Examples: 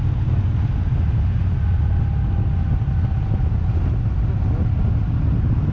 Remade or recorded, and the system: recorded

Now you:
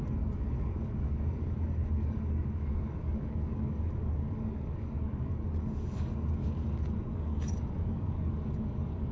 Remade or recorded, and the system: remade, codec, DAC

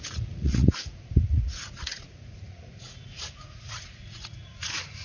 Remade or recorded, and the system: remade, vocoder, Vocos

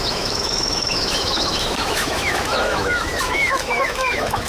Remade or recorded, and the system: remade, autoencoder, DAC-VAE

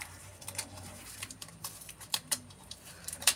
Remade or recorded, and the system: remade, vocoder, BigVGAN v2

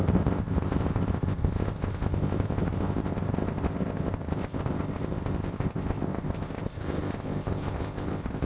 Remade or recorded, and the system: remade, codec, ZipCodec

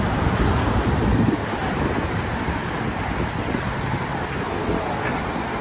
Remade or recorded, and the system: recorded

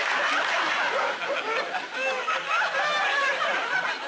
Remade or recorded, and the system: recorded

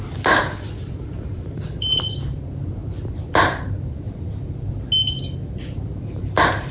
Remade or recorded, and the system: recorded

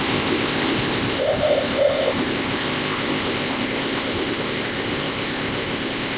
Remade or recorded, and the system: remade, codec, ZipCodec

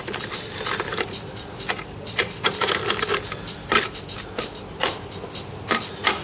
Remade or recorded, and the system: recorded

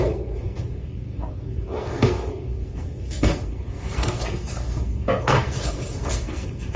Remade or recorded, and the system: remade, codec, SNAC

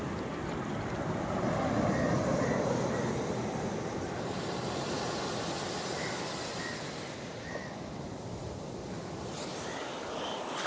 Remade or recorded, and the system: recorded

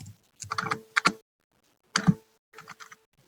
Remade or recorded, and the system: recorded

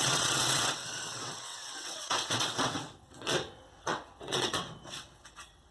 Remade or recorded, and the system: remade, vocoder, WaveNeXt